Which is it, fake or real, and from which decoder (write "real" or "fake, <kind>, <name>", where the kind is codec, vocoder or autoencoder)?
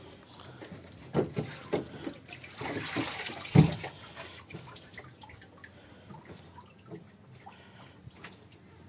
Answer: real